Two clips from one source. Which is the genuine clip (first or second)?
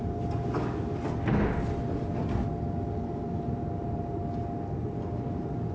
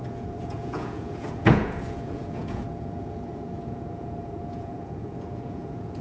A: first